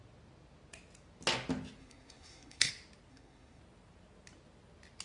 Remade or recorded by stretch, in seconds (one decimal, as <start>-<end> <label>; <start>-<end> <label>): 0.0-1.8 recorded; 1.8-2.7 remade; 2.7-3.1 recorded; 3.1-3.6 remade; 3.6-5.0 recorded